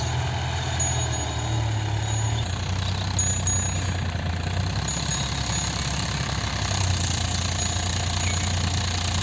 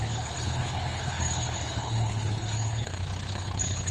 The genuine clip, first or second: first